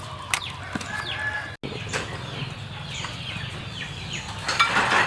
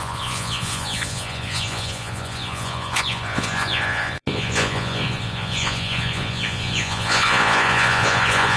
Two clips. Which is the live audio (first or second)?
first